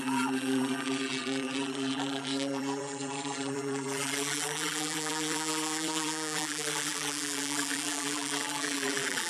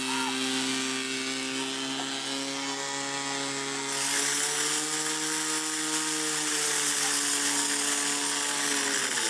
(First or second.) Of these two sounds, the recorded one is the second